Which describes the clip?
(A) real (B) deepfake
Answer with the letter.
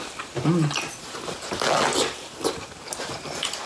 A